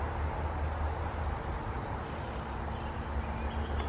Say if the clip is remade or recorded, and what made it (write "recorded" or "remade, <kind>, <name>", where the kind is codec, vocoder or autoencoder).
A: recorded